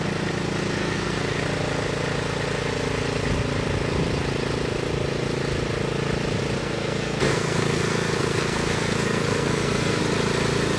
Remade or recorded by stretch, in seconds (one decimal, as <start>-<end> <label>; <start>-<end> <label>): 0.0-0.8 recorded; 0.8-1.4 remade; 1.4-6.6 recorded; 6.6-10.0 remade; 10.0-10.8 recorded